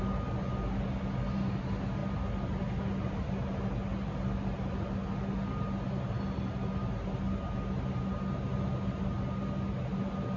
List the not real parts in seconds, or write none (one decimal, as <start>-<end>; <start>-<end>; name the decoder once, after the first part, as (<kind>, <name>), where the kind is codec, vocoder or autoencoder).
none